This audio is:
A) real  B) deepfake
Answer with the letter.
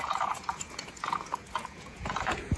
B